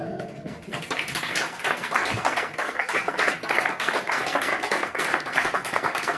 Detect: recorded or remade remade